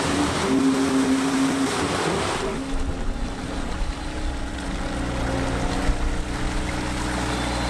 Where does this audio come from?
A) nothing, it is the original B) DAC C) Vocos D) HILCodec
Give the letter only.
A